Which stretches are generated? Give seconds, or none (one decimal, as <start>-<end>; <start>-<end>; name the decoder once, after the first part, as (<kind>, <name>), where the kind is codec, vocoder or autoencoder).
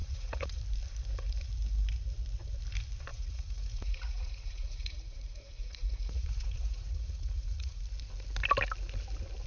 0.0-0.6 (vocoder, Vocos); 3.1-7.8